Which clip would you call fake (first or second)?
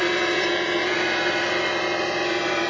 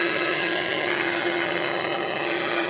second